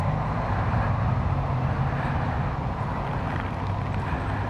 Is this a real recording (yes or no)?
yes